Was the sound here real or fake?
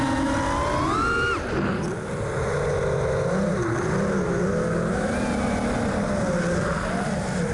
real